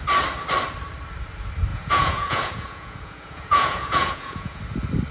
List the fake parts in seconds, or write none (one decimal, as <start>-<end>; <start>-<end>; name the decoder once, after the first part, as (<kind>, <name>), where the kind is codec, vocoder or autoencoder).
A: 1.7-4.6 (vocoder, Vocos)